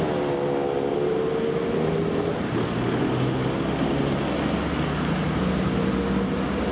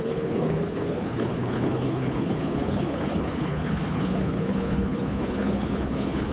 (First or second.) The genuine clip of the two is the first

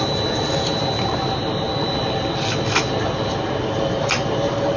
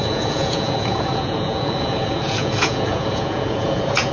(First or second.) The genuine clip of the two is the first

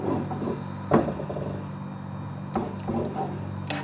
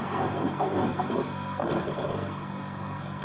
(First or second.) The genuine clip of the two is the first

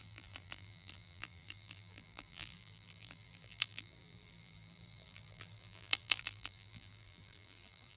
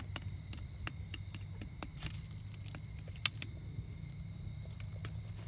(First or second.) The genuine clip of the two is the second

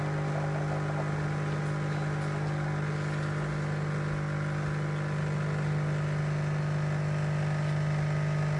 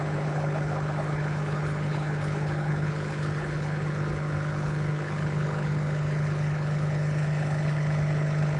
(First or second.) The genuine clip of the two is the first